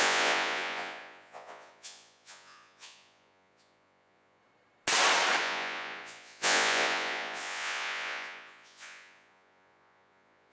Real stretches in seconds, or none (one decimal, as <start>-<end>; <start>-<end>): 4.4-5.4